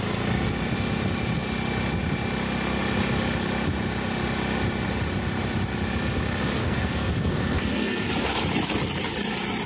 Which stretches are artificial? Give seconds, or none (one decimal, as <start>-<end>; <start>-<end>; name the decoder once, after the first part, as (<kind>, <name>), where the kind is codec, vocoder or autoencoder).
6.6-8.1 (codec, SNAC)